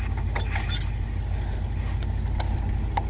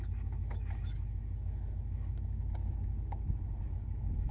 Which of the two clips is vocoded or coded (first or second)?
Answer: second